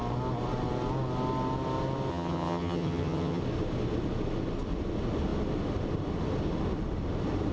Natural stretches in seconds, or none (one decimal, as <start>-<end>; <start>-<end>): 0.0-2.1; 3.4-7.5